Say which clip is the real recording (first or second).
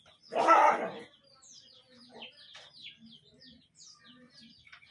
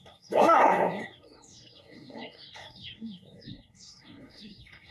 first